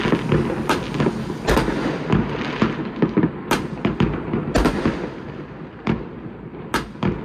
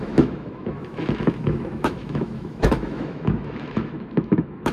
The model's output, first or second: second